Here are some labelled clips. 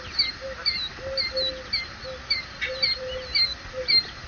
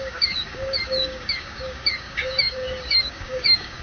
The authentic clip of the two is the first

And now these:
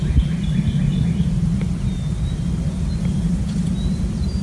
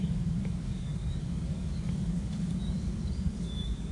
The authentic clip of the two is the first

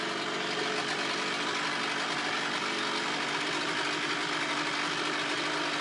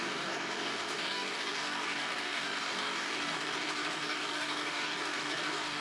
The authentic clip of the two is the first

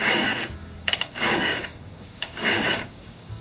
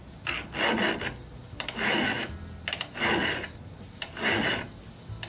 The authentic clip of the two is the second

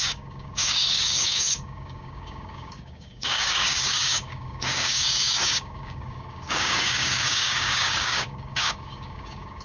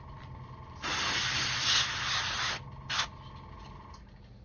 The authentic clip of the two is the second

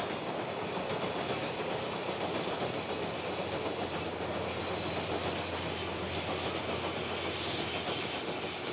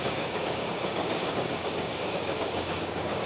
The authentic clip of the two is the first